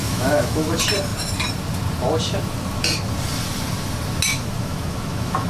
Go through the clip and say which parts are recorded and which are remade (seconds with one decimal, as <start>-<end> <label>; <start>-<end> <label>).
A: 0.0-0.7 remade; 0.7-4.3 recorded; 4.3-5.5 remade